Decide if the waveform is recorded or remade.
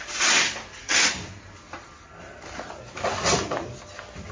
recorded